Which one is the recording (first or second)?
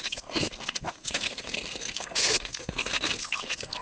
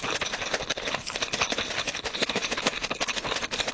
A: second